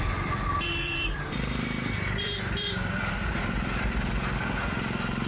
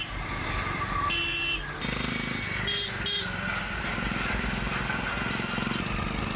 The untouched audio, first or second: second